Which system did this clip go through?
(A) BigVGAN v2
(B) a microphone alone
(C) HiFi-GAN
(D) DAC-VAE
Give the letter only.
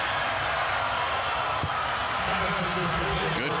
B